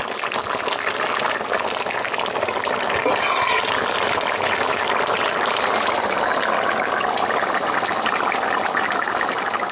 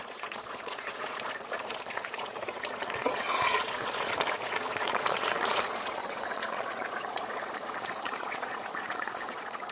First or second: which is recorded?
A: first